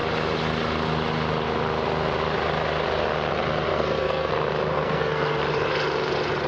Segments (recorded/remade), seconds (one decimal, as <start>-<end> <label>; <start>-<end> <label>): 0.0-3.7 recorded; 3.7-4.3 remade; 4.3-4.7 recorded; 4.7-5.4 remade; 5.4-6.5 recorded